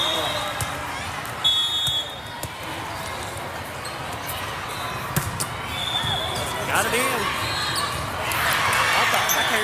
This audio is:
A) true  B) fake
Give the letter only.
A